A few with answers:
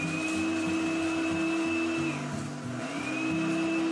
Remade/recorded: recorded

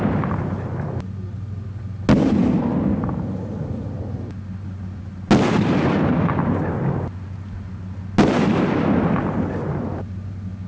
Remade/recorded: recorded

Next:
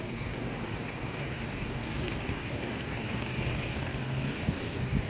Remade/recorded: remade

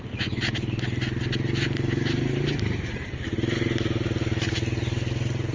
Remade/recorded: recorded